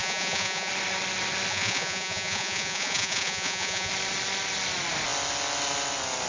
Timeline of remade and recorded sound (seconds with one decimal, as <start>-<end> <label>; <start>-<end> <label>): 0.0-0.7 remade; 0.7-1.5 recorded; 1.5-3.9 remade; 3.9-6.3 recorded